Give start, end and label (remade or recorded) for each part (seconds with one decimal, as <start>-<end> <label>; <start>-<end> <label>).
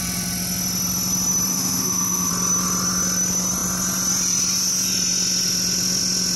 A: 0.0-1.5 recorded; 1.5-2.3 remade; 2.3-6.4 recorded